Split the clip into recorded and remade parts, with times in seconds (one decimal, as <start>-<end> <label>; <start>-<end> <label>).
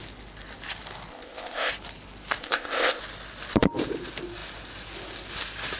0.0-1.1 recorded; 1.1-1.7 remade; 1.7-2.4 recorded; 2.4-3.0 remade; 3.0-5.8 recorded